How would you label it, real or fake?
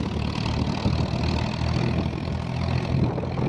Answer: real